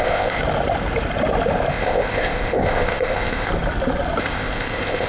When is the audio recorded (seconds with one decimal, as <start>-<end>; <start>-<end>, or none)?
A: 0.4-1.7; 3.5-4.2